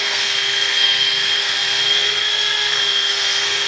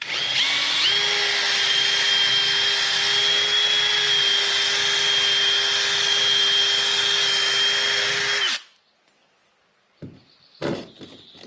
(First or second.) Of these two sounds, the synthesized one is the first